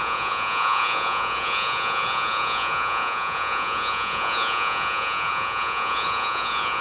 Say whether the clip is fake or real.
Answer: fake